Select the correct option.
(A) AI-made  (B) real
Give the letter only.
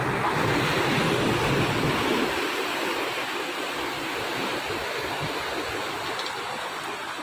B